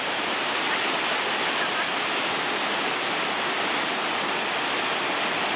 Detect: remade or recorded recorded